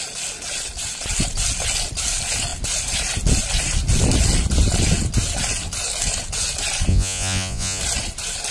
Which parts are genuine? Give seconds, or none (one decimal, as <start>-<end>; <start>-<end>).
0.0-6.9; 7.8-8.5